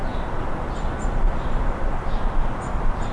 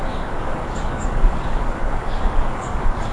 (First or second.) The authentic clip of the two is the first